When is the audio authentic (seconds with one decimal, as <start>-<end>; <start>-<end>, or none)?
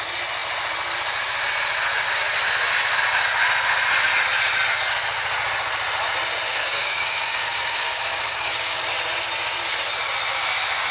0.0-6.6; 8.9-10.9